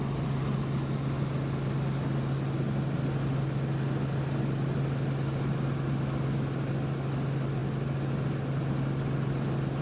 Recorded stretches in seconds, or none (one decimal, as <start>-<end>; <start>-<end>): 0.0-9.8